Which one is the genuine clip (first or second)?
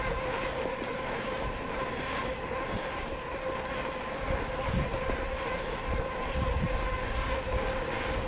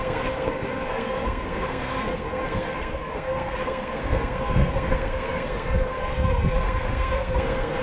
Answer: first